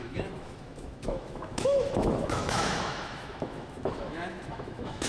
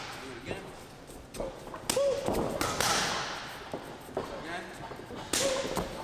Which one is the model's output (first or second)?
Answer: first